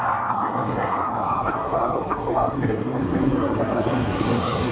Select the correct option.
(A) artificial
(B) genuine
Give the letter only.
A